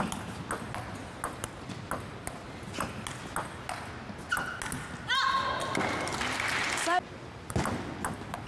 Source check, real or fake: real